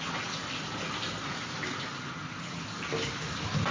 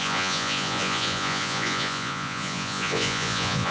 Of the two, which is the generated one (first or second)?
second